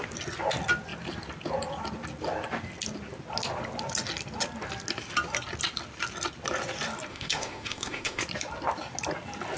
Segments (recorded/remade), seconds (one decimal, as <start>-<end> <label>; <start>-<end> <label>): 0.0-7.1 recorded; 7.1-8.2 remade; 8.2-9.6 recorded